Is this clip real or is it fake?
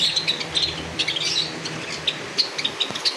real